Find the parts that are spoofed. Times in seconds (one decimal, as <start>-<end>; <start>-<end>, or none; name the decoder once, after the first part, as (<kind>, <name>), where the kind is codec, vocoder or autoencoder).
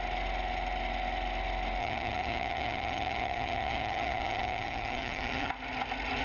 1.8-5.5 (vocoder, HiFi-GAN)